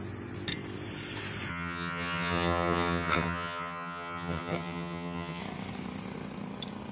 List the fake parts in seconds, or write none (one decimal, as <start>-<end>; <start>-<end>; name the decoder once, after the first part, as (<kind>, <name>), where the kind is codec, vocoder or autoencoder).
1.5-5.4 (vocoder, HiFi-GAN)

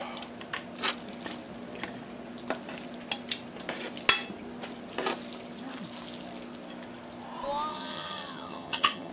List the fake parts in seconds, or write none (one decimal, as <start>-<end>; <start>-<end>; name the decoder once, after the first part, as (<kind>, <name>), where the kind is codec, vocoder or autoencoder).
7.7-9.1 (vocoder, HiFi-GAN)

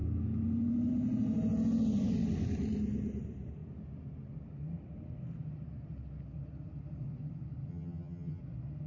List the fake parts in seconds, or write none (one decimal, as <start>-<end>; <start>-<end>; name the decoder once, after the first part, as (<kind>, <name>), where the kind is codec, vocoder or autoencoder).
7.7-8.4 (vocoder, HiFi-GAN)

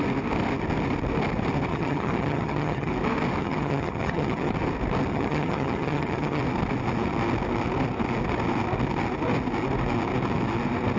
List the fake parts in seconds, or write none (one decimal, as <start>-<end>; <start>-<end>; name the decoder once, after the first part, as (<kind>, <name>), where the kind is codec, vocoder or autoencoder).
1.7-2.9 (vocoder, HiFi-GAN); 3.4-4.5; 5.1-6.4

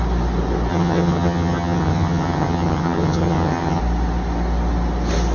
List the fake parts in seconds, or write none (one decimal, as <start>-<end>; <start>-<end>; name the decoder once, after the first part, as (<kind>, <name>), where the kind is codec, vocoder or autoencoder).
0.7-3.8 (vocoder, HiFi-GAN)